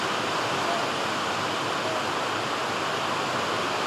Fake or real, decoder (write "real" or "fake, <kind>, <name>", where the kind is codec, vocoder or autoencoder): real